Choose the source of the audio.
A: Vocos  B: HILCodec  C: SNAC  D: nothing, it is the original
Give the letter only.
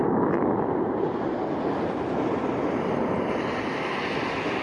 D